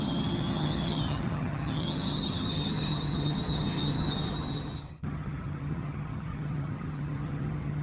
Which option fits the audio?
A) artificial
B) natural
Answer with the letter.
A